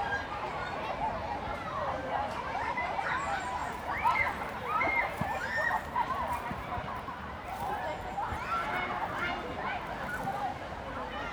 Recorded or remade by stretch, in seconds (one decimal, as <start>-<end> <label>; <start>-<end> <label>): 0.0-1.5 recorded; 1.5-3.1 remade; 3.1-3.6 recorded; 3.6-7.7 remade; 7.7-11.3 recorded